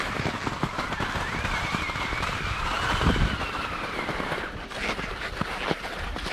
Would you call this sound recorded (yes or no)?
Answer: yes